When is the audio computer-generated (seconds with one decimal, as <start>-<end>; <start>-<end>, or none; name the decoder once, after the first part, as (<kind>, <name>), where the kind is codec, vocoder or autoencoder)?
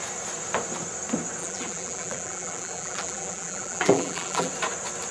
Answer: 1.4-4.5 (vocoder, BigVGAN v2)